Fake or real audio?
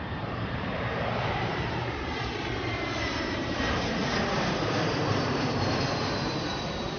fake